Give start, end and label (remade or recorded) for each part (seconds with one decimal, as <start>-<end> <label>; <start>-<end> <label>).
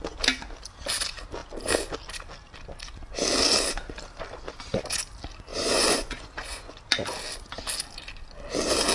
0.0-5.5 recorded; 5.5-6.8 remade; 6.8-8.9 recorded